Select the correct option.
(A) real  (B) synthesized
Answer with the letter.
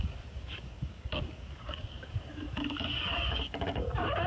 B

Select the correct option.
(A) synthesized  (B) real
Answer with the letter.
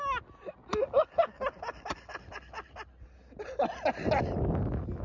B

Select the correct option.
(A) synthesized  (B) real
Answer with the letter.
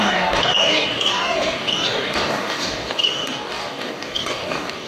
A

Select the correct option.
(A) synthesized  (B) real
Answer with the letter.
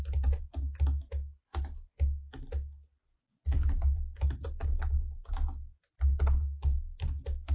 B